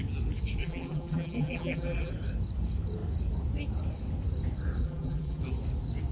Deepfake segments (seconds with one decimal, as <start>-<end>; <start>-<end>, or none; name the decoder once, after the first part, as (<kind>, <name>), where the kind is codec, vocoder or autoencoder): 0.6-2.1 (vocoder, BigVGAN v2); 4.8-5.4